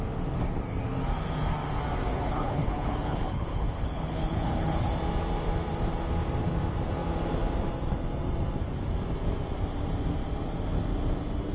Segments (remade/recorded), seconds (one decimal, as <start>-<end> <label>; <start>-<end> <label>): 0.0-2.1 recorded; 2.1-4.9 remade; 4.9-11.5 recorded